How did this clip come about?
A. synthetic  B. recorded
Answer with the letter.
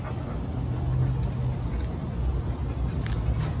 B